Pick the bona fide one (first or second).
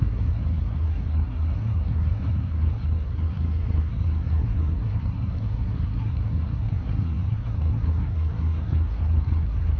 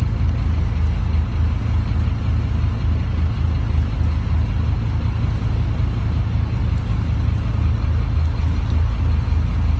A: second